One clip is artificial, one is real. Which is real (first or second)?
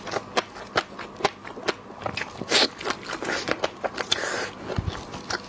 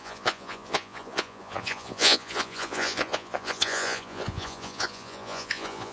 first